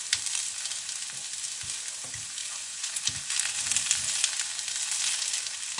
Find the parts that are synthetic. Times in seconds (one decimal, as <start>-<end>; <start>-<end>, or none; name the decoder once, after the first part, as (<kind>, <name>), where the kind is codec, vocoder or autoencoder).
2.4-3.0 (vocoder, Vocos)